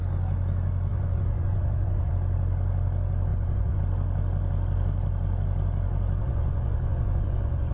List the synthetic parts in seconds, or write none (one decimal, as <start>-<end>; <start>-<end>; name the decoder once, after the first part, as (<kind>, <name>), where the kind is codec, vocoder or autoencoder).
0.9-2.1 (vocoder, Vocos); 3.3-3.8; 6.2-7.7